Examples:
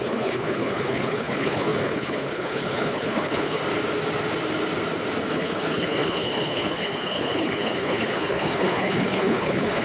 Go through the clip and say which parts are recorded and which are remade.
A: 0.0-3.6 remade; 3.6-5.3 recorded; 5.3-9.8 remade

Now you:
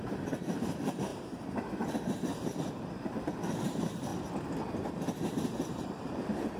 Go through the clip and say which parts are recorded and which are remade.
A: 0.0-4.1 remade; 4.1-4.9 recorded; 4.9-6.6 remade

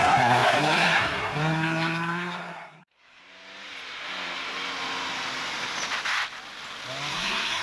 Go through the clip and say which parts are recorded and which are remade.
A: 0.0-3.2 remade; 3.2-7.1 recorded; 7.1-7.6 remade

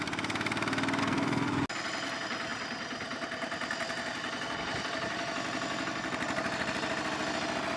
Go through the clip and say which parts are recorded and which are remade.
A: 0.0-1.0 recorded; 1.0-1.5 remade; 1.5-7.8 recorded

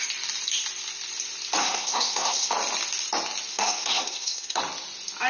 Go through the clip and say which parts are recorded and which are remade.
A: 0.0-1.6 recorded; 1.6-2.5 remade; 2.5-3.5 recorded; 3.5-4.6 remade; 4.6-5.3 recorded